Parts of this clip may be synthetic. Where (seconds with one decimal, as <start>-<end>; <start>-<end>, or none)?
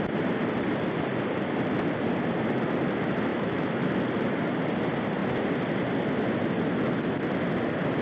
3.3-3.9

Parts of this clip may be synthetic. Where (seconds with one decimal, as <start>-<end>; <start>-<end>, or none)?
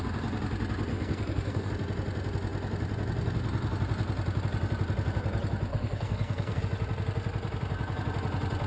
0.9-1.7; 5.7-6.6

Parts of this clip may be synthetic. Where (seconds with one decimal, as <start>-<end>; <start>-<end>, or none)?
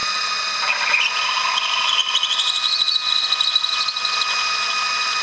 0.0-1.2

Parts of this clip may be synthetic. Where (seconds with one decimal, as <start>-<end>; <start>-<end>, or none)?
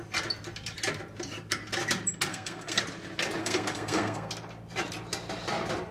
2.3-2.8; 3.4-4.3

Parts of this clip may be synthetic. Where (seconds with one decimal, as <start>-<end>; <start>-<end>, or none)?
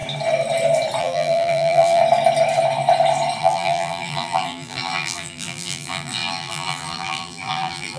1.0-2.0; 3.4-8.0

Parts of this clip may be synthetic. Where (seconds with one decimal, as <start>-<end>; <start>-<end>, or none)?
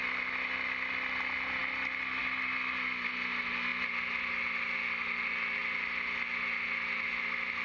none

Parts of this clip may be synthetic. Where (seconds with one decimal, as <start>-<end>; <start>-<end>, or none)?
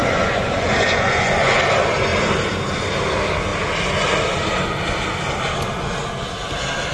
0.0-1.6